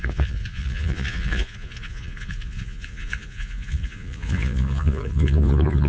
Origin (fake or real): fake